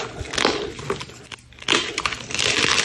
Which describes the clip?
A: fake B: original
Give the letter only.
B